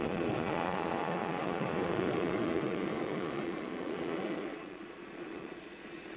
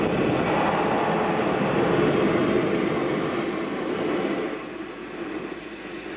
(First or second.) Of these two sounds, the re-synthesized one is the first